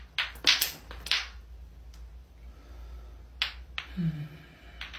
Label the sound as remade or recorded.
recorded